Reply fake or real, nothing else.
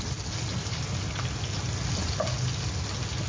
real